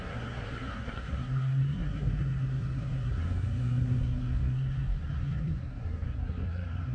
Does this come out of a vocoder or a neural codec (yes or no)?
yes